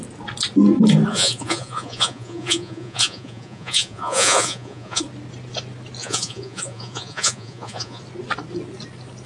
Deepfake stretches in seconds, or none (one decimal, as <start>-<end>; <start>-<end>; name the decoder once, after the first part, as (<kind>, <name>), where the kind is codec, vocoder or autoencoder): 1.1-5.0 (vocoder, Vocos); 6.0-8.0